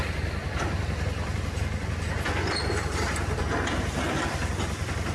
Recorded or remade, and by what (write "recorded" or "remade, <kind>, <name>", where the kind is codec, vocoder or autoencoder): recorded